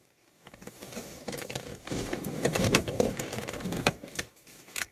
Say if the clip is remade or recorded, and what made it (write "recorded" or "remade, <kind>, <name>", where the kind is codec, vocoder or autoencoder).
remade, codec, DAC